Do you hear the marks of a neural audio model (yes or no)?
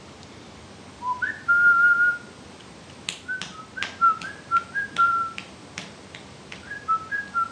no